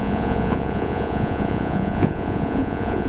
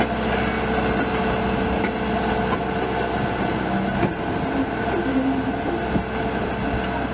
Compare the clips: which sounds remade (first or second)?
first